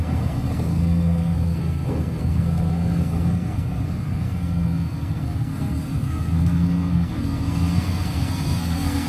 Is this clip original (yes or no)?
no